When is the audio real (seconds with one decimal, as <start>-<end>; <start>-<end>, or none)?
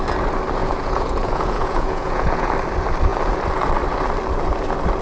0.0-0.6; 2.5-5.0